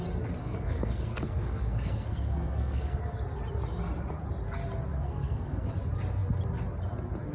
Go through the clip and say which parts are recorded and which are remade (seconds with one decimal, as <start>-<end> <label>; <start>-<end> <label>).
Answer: 0.0-0.4 recorded; 0.4-3.0 remade; 3.0-5.0 recorded; 5.0-5.7 remade; 5.7-7.3 recorded